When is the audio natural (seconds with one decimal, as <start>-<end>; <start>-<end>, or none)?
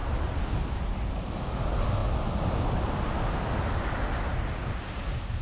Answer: 0.0-5.4